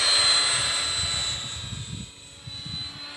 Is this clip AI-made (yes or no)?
no